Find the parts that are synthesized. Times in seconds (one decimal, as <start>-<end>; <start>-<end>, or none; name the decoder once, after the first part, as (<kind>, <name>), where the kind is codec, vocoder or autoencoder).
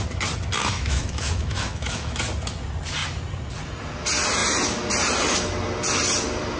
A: 0.6-2.2 (autoencoder, DAC-VAE)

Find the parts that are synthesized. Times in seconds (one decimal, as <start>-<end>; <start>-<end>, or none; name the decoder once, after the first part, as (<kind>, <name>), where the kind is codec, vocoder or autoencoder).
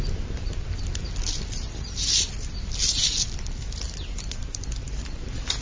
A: none